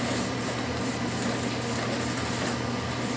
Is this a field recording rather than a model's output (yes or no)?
yes